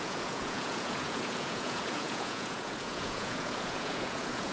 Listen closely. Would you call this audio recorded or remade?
remade